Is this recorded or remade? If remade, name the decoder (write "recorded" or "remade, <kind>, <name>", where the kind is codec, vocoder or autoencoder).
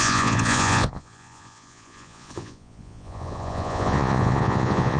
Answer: remade, vocoder, Vocos